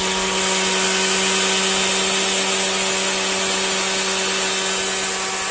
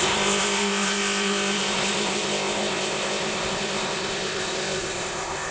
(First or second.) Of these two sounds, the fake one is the second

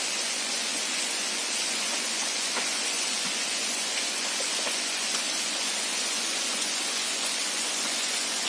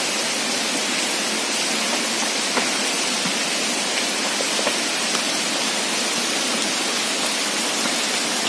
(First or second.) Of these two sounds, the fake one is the first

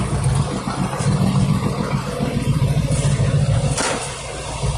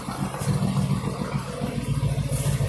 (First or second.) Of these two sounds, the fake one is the first